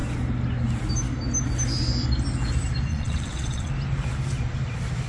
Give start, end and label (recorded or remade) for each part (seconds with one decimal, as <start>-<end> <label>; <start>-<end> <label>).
0.0-2.9 recorded; 2.9-3.7 remade; 3.7-5.1 recorded